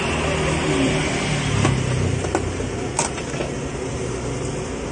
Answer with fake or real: real